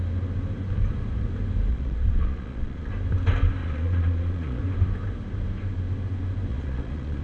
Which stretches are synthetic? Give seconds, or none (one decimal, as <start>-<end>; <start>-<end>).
1.7-2.9; 3.6-4.6; 6.5-7.2